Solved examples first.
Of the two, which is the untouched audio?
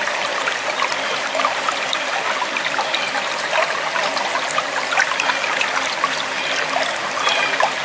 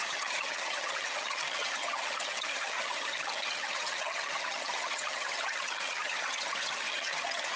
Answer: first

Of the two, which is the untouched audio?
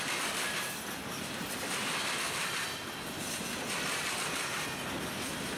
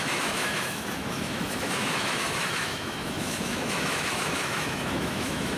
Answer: first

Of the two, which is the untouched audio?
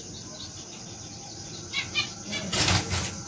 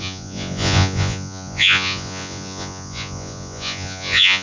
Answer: first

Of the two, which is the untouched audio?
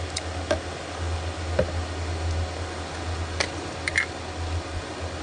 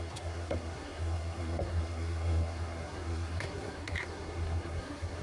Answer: first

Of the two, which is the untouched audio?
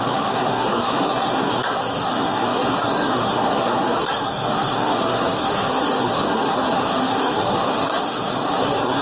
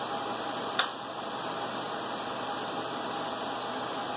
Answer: second